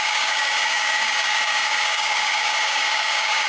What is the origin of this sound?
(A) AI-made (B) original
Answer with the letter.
A